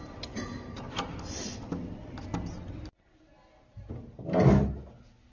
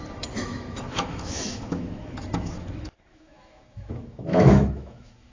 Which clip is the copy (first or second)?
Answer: second